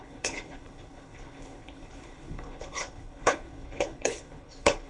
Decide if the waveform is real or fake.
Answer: fake